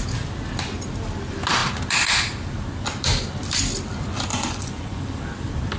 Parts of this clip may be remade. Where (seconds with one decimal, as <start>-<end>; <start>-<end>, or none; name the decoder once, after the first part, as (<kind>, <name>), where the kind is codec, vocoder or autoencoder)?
4.3-5.0 (vocoder, Vocos)